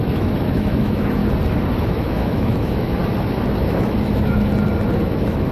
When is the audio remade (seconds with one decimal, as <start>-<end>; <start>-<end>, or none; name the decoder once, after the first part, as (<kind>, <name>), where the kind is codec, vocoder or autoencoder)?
0.0-1.2 (autoencoder, DAC-VAE); 1.8-3.0; 3.6-4.5; 5.0-5.5